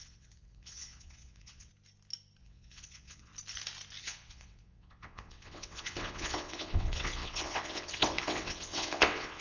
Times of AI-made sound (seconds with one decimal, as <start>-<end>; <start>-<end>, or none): 0.0-1.7; 2.4-3.3; 4.0-9.4